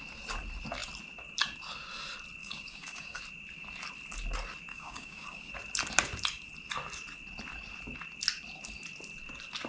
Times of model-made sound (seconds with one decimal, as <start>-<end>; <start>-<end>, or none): 2.4-3.2; 4.7-5.5